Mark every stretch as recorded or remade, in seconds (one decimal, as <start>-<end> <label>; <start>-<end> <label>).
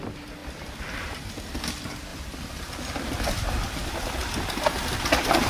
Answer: 0.0-0.4 recorded; 0.4-1.3 remade; 1.3-2.1 recorded; 2.1-2.9 remade; 2.9-5.5 recorded